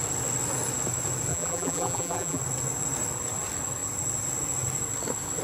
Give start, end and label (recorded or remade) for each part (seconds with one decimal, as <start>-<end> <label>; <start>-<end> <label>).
0.0-1.3 recorded; 1.3-2.4 remade; 2.4-5.4 recorded